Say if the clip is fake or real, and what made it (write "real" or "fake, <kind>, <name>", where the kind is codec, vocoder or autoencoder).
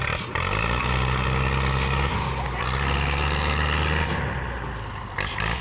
real